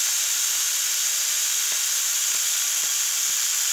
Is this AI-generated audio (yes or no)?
no